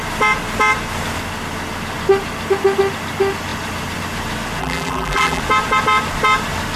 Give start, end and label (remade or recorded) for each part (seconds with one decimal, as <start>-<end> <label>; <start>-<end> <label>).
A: 0.0-4.6 recorded; 4.6-5.4 remade; 5.4-6.8 recorded